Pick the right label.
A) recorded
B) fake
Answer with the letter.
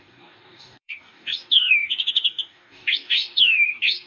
B